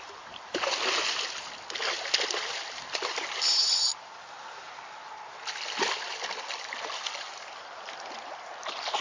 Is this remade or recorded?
recorded